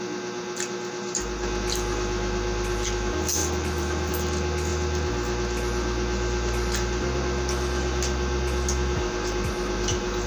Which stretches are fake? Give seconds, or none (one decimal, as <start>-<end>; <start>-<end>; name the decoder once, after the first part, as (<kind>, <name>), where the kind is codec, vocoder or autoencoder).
3.4-4.1 (vocoder, BigVGAN v2)